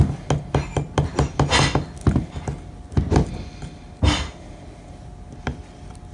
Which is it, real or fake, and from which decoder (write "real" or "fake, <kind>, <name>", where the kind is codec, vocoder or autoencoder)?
real